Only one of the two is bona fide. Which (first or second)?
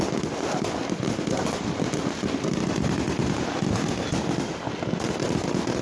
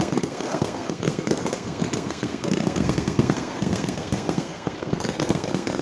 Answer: first